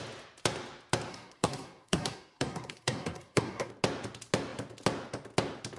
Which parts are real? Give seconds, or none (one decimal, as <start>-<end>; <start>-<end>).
0.0-1.1; 3.7-5.8